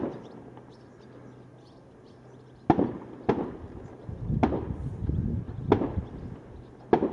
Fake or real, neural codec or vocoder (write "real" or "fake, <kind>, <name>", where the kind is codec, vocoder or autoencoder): real